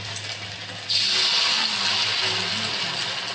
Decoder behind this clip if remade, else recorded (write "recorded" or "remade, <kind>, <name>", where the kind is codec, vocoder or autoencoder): recorded